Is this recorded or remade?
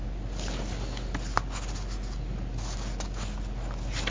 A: recorded